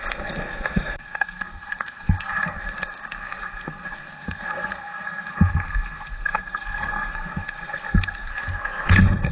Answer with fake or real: fake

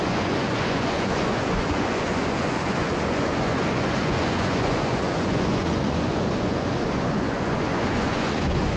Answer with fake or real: fake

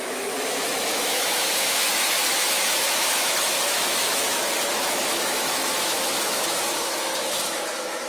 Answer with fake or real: fake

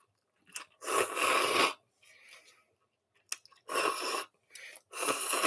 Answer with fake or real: real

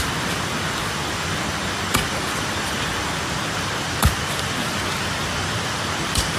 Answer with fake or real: real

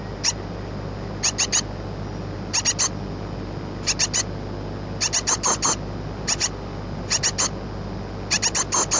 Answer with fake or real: real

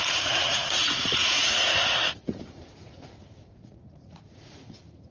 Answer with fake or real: fake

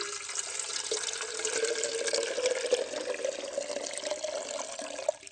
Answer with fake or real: real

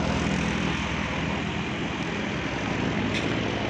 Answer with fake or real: fake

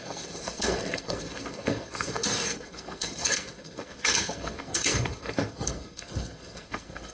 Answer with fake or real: fake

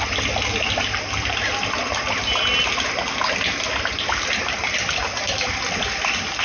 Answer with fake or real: real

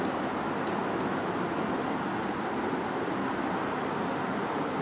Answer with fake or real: real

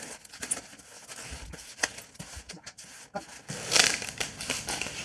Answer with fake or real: real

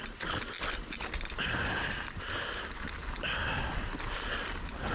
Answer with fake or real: real